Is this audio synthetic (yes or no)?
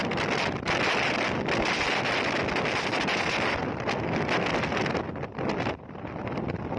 no